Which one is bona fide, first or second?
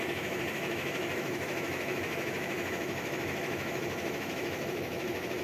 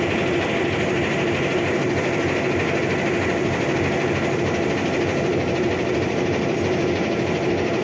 second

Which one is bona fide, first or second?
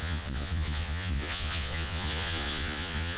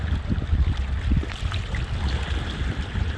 second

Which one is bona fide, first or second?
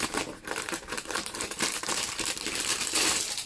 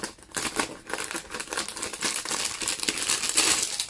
second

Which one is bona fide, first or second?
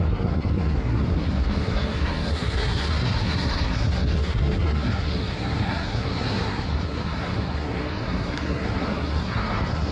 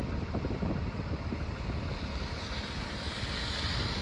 second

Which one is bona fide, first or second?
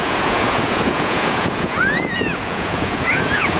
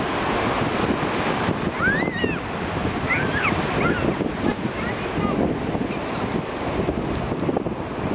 second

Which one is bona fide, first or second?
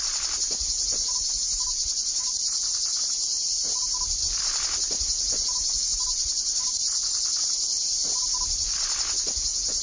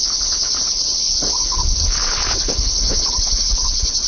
first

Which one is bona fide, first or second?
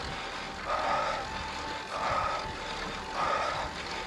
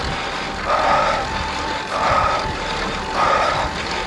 first